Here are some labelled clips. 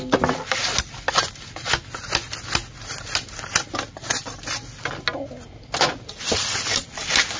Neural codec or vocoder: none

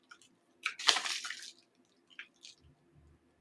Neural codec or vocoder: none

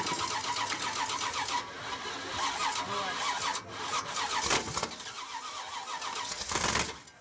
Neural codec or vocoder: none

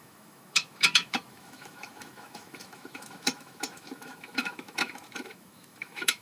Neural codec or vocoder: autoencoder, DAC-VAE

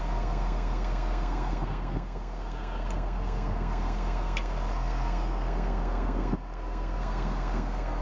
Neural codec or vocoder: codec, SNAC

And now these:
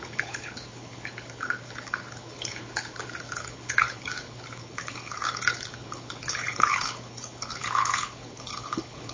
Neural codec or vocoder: codec, HILCodec